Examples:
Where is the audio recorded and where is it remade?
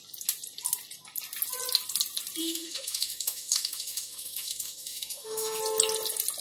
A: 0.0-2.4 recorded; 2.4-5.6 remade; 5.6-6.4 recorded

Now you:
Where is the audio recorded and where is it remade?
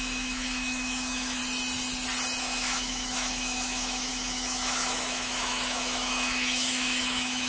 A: 0.0-1.4 remade; 1.4-2.4 recorded; 2.4-7.5 remade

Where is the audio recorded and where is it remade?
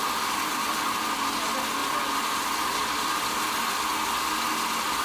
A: 0.0-5.0 recorded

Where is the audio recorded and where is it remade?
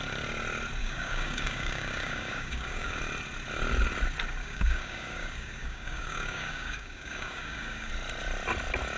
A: 0.0-0.8 recorded; 0.8-3.0 remade; 3.0-4.4 recorded; 4.4-7.9 remade; 7.9-9.0 recorded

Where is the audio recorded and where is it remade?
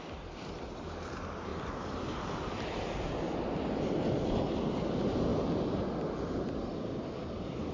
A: 0.0-7.7 recorded